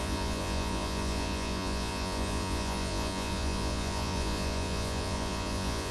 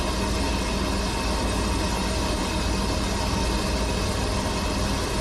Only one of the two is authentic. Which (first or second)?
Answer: second